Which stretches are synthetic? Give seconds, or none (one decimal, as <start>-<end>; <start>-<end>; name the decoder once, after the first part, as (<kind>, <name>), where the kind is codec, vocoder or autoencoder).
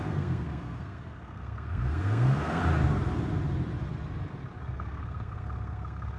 0.0-2.6 (codec, SNAC); 4.6-6.2